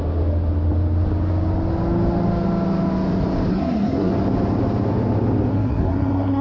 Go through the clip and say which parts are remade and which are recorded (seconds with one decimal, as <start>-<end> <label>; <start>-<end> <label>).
0.0-3.5 recorded; 3.5-4.1 remade; 4.1-5.5 recorded; 5.5-6.4 remade

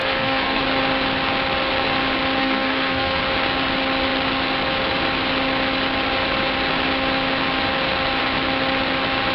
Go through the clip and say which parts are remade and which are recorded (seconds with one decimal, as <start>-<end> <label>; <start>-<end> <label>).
0.0-0.6 remade; 0.6-2.4 recorded; 2.4-3.2 remade; 3.2-9.3 recorded

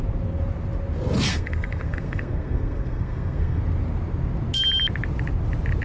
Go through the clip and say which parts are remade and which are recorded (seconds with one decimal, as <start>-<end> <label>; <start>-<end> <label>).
0.0-1.3 recorded; 1.3-3.6 remade; 3.6-5.8 recorded

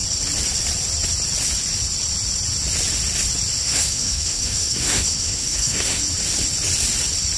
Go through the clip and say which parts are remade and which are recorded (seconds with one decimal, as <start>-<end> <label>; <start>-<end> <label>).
0.0-3.6 recorded; 3.6-6.0 remade; 6.0-7.4 recorded

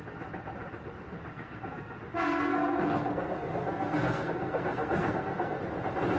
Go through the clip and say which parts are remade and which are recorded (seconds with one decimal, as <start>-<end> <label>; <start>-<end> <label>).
0.0-1.3 recorded; 1.3-2.0 remade; 2.0-2.5 recorded; 2.5-5.6 remade; 5.6-6.2 recorded

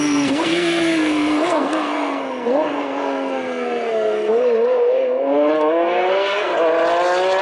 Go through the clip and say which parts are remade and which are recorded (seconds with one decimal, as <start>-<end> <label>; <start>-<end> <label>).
0.0-6.5 remade; 6.5-7.4 recorded